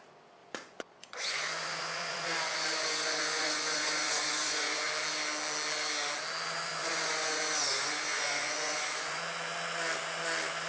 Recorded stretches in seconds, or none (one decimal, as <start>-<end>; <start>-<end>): 0.0-0.4; 4.9-6.7; 9.2-10.7